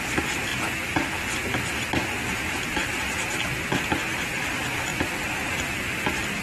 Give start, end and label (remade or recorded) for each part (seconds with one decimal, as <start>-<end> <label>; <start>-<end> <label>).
0.0-6.4 recorded